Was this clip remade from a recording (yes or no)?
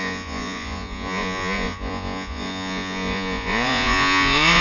yes